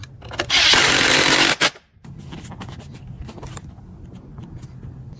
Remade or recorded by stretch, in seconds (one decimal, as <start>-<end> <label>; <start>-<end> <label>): 0.0-5.2 recorded